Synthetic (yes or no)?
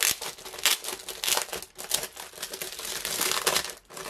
no